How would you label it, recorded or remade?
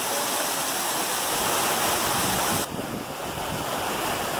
recorded